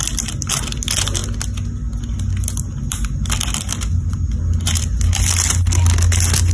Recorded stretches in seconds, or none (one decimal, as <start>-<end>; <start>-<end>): 0.0-6.5